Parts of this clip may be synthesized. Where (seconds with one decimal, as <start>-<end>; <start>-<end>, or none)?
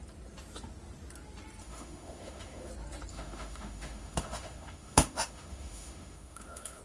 1.6-2.7; 3.1-6.8